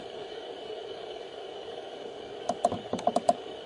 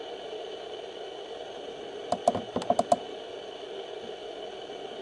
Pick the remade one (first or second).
first